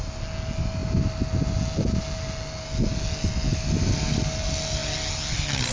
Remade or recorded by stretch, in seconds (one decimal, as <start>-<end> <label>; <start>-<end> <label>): 0.0-5.7 recorded